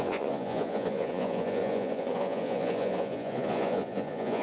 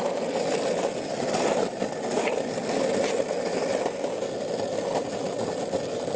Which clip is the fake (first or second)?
first